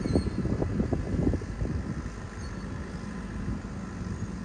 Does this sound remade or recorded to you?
recorded